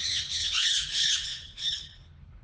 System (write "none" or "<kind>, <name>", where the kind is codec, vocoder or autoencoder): codec, HILCodec